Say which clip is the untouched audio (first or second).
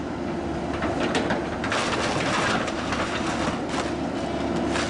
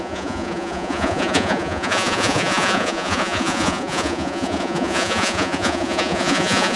first